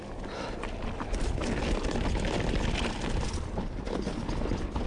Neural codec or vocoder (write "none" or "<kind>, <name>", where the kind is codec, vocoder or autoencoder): none